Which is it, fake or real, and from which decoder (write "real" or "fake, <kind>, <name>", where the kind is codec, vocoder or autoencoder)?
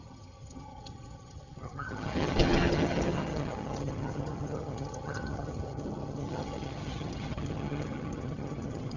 fake, vocoder, HiFi-GAN